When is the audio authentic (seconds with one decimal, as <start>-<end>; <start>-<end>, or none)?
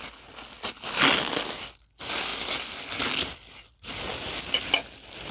0.0-5.3